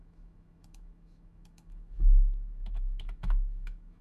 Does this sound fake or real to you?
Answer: fake